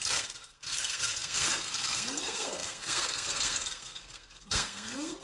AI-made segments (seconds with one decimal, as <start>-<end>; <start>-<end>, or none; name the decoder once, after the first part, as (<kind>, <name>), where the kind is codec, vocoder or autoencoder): 0.0-5.2 (codec, SNAC)